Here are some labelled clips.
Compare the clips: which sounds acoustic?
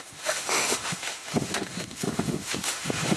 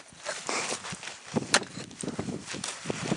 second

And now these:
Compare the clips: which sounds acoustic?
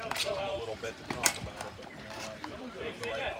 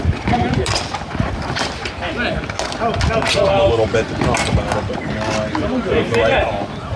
second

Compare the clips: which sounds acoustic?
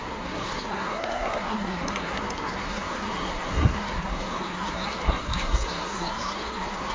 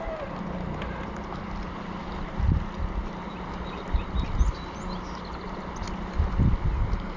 second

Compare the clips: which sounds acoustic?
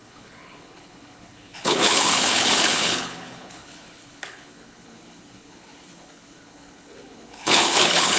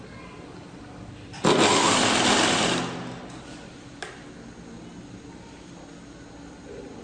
second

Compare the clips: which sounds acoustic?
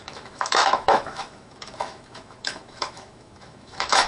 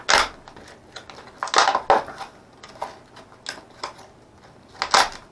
second